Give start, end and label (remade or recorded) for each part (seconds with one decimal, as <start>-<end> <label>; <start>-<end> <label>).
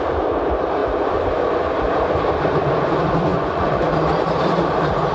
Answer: 0.0-3.3 recorded; 3.3-3.9 remade; 3.9-5.1 recorded